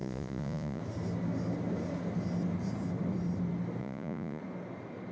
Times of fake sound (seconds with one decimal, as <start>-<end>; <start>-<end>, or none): 0.0-0.8; 3.8-4.4